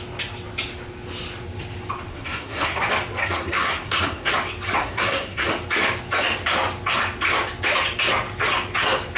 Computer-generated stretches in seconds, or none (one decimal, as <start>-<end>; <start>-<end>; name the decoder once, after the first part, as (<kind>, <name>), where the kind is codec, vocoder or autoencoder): 2.1-2.8 (codec, SNAC); 3.2-4.3; 4.8-5.5